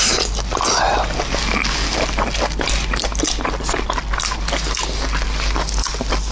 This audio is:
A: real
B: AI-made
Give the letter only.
A